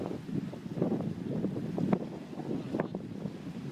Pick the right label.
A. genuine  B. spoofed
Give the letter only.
A